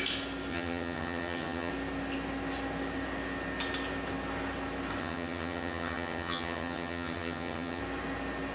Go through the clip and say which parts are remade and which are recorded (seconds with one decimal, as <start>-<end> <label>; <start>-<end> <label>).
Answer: 0.0-0.5 recorded; 0.5-1.7 remade; 1.7-5.0 recorded; 5.0-7.8 remade; 7.8-8.5 recorded